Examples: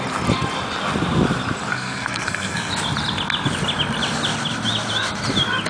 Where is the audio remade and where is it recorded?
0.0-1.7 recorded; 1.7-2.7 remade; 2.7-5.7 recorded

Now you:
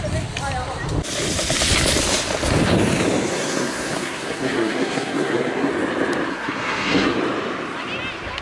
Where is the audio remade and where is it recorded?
0.0-3.3 recorded; 3.3-5.7 remade; 5.7-6.3 recorded; 6.3-7.2 remade; 7.2-8.4 recorded

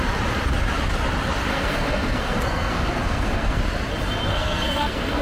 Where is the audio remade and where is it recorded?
0.0-1.5 recorded; 1.5-3.6 remade; 3.6-4.3 recorded; 4.3-5.2 remade

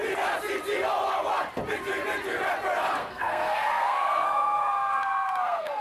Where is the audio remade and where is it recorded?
0.0-3.0 recorded; 3.0-5.8 remade

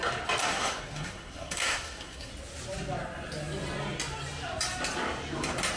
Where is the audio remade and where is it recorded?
0.0-0.4 recorded; 0.4-2.3 remade; 2.3-5.8 recorded

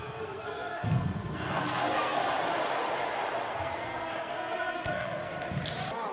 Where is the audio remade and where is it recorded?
0.0-2.2 remade; 2.2-3.5 recorded; 3.5-5.3 remade; 5.3-6.1 recorded

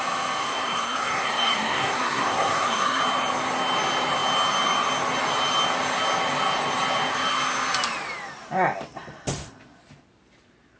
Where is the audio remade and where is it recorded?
0.0-0.4 recorded; 0.4-3.0 remade; 3.0-10.8 recorded

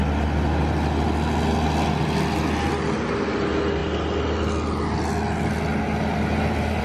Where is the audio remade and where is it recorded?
0.0-6.8 recorded